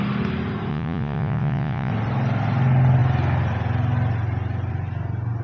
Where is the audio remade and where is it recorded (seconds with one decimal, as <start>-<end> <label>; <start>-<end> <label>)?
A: 0.0-0.7 recorded; 0.7-1.9 remade; 1.9-5.4 recorded